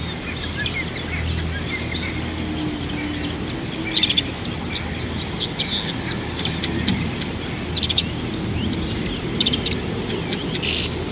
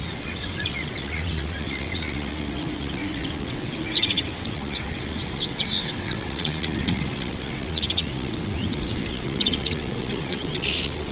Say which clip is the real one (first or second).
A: first